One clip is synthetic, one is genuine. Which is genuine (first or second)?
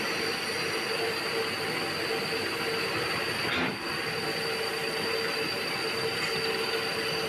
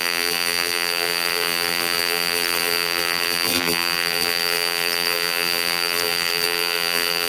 first